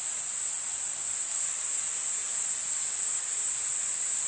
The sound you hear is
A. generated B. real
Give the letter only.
B